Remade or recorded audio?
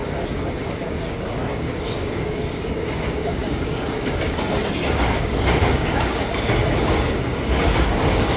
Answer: remade